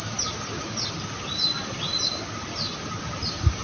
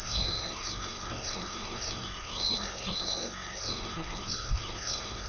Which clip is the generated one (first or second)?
second